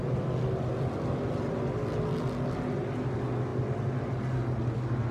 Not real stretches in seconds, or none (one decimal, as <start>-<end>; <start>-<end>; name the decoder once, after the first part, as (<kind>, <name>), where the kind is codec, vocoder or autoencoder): none